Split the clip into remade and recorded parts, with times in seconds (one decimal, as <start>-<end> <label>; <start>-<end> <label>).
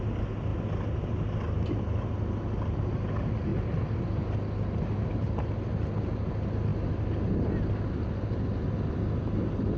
0.0-9.8 recorded